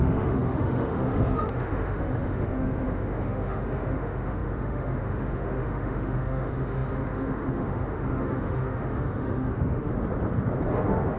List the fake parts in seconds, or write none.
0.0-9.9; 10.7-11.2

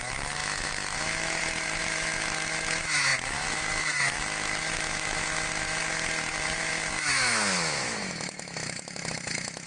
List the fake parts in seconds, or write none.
0.0-9.7

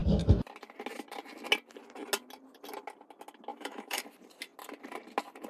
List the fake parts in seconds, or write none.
3.5-4.0

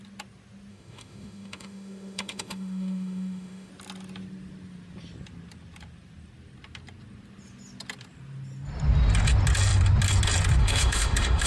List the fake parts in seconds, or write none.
0.7-3.7; 10.6-11.5

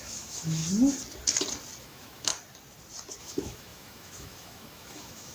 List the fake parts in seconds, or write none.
0.0-0.6; 1.8-2.3; 3.2-5.3

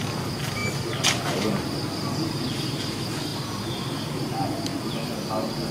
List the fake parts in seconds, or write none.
none